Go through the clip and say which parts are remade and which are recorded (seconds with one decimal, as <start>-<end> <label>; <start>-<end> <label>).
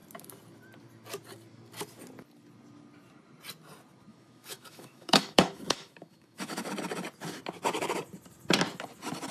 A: 0.0-4.1 recorded; 4.1-6.7 remade; 6.7-9.3 recorded